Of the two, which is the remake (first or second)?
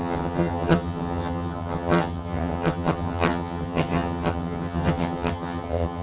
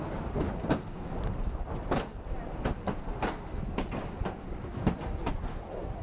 first